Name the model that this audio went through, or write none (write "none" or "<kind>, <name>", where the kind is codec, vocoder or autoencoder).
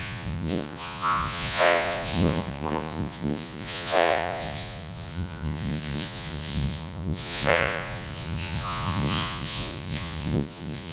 vocoder, Vocos